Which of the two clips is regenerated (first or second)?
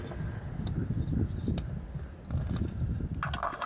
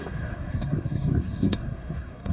second